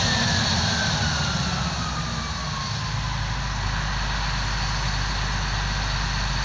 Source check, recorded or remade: recorded